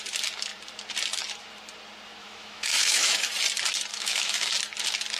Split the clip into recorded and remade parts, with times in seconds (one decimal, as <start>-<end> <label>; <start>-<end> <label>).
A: 0.0-2.2 recorded; 2.2-3.3 remade; 3.3-3.9 recorded; 3.9-4.5 remade; 4.5-5.2 recorded